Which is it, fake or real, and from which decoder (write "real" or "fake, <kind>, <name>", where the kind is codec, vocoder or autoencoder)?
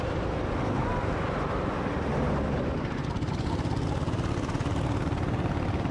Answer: real